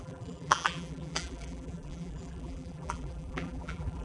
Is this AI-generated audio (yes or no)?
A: yes